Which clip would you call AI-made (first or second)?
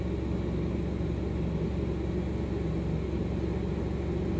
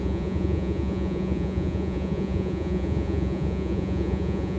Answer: second